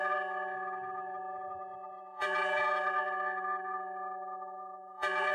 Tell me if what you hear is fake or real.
fake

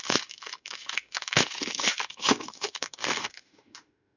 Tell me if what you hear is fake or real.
fake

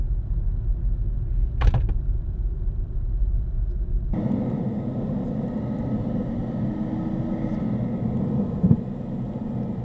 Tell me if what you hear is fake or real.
real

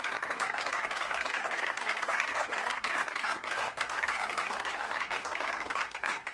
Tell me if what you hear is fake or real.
fake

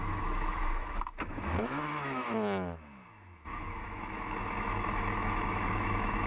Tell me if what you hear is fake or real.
fake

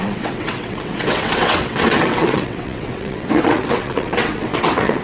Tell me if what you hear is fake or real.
fake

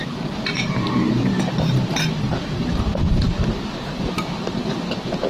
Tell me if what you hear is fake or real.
fake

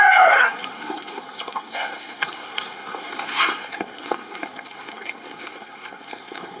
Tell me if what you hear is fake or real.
fake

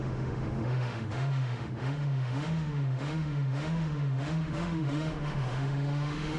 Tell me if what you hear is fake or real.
fake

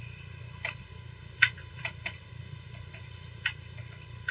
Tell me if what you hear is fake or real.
real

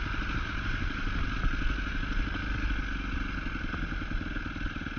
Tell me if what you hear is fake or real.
real